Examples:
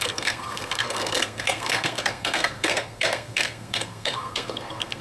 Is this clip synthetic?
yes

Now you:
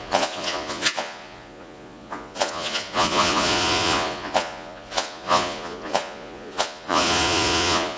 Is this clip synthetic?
yes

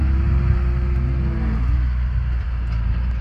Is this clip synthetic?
no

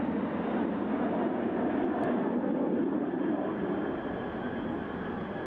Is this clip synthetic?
no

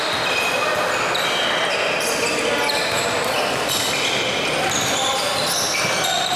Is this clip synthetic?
no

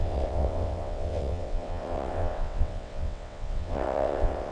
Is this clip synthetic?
yes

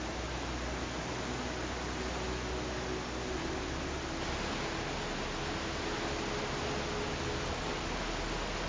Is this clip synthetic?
no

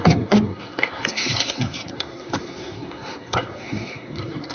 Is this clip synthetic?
yes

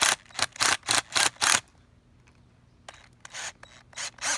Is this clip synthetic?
no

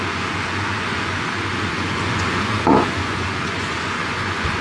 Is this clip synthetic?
yes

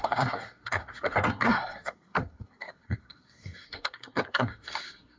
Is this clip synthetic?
yes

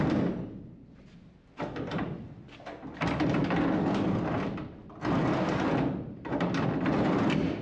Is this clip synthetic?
no